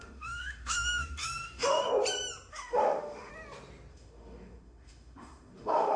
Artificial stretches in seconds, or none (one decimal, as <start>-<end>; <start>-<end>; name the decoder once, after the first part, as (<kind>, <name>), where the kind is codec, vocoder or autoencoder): 0.0-1.9 (autoencoder, DAC-VAE); 2.5-3.3; 3.9-6.0